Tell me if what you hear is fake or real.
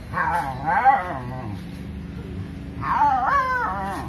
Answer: real